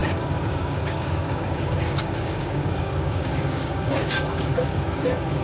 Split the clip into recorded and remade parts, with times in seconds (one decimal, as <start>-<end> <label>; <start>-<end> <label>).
0.0-5.4 remade